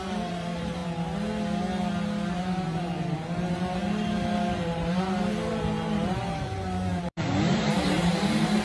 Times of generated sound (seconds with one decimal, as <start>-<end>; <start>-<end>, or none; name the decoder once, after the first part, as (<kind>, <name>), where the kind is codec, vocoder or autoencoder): 0.0-0.8 (vocoder, BigVGAN v2); 2.4-8.6